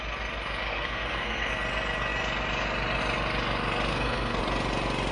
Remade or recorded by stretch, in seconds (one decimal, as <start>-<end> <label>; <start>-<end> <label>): 0.0-0.7 recorded; 0.7-1.5 remade; 1.5-3.9 recorded; 3.9-4.4 remade; 4.4-5.1 recorded